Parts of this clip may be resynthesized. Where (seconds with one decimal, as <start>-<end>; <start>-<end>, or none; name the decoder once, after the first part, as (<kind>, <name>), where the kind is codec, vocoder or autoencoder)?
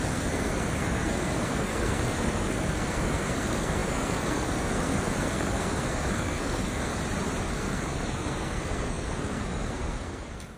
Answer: 0.0-6.9 (codec, SNAC); 7.4-10.6